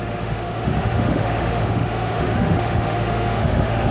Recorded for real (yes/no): no